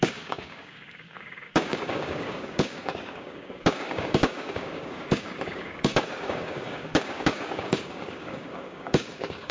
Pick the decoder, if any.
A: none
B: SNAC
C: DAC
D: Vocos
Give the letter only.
C